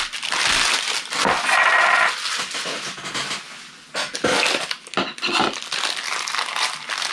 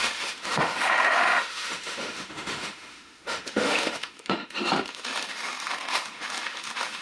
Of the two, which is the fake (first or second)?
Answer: second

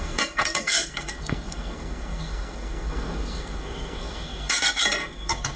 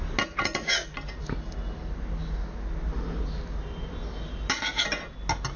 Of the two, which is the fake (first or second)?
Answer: first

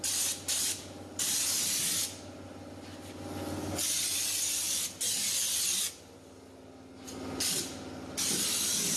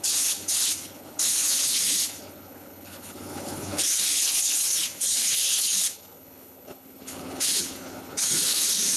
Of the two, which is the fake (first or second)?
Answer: second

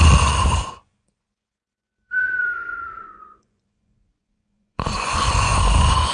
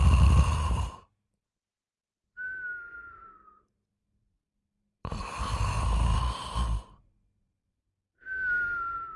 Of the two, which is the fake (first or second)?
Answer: first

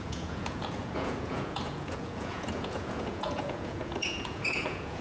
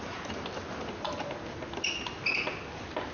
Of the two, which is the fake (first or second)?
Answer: first